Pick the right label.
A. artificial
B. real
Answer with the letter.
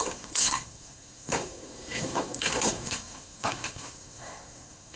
A